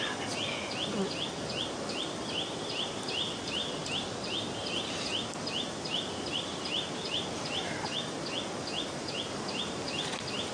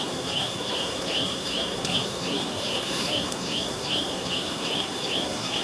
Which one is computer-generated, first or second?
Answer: second